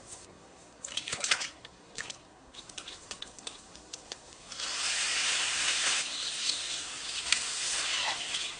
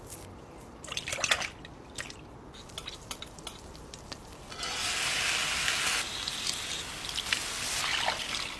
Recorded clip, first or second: second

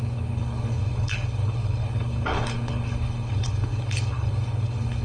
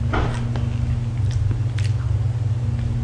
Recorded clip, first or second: second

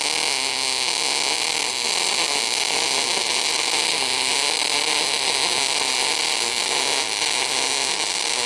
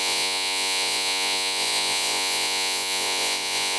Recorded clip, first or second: first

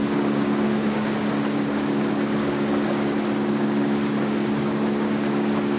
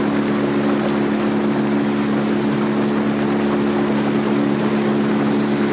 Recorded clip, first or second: second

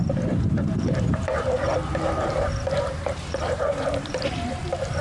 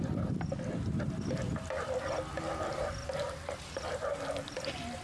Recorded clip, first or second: second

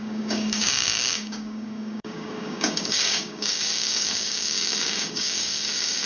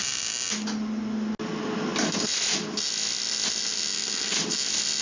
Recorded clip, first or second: second